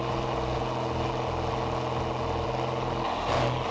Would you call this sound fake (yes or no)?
no